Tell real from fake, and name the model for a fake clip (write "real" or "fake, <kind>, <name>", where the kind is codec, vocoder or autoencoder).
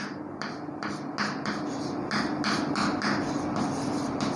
real